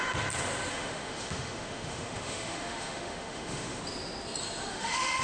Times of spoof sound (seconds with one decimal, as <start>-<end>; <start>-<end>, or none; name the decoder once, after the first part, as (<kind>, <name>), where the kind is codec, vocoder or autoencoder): 0.7-3.8 (autoencoder, DAC-VAE); 4.7-5.2